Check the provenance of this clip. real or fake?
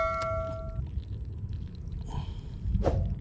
real